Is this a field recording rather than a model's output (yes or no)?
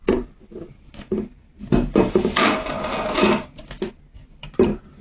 yes